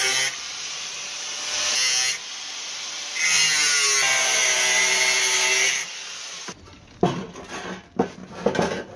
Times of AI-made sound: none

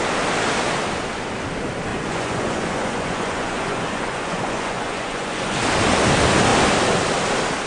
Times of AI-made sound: 1.9-5.6

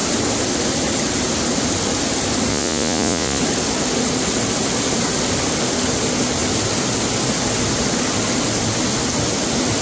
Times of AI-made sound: 2.5-3.4

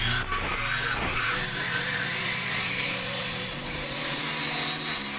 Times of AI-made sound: 1.1-4.2